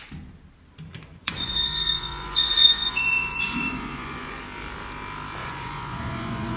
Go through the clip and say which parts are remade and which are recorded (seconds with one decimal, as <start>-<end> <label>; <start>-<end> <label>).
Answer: 0.0-1.1 recorded; 1.1-4.4 remade; 4.4-5.4 recorded; 5.4-6.6 remade